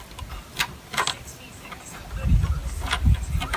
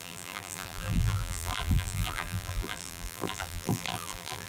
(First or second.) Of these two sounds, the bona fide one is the first